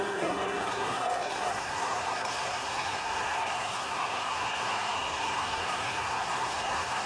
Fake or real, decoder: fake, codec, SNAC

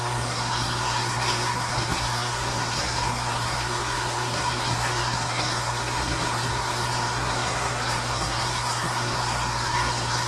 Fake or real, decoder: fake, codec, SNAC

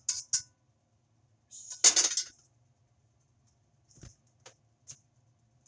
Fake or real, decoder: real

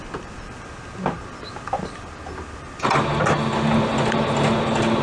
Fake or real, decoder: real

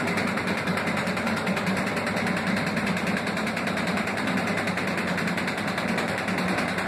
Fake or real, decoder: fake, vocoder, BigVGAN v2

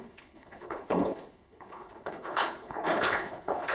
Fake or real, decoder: fake, codec, HILCodec